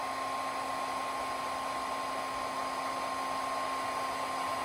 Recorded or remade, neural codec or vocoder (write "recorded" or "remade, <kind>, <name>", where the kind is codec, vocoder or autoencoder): recorded